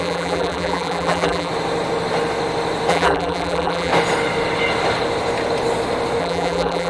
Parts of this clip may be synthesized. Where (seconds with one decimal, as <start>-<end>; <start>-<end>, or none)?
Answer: 0.0-1.5; 2.9-3.9; 6.2-6.9